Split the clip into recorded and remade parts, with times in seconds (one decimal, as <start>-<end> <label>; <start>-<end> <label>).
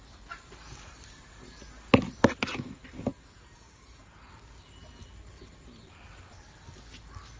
0.0-3.1 recorded; 3.1-4.3 remade; 4.3-7.4 recorded